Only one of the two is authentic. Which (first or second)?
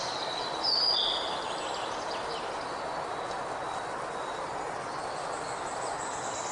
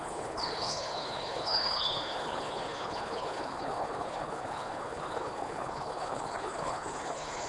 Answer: first